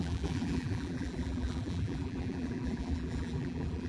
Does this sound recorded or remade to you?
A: remade